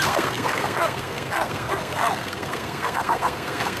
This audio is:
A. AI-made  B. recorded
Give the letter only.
A